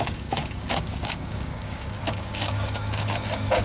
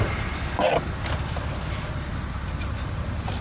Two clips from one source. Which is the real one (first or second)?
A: second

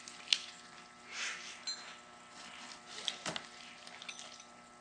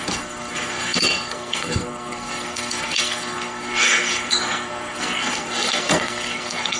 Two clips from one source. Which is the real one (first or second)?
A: first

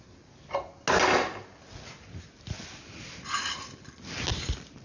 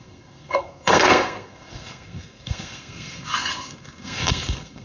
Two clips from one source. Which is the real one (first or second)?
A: first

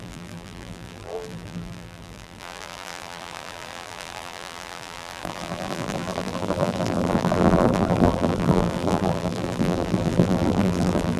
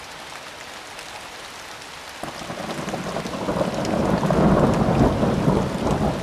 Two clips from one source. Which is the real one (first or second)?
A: second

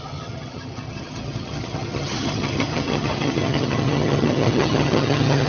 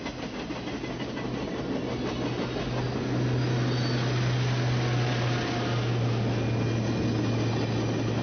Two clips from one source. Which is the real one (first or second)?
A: second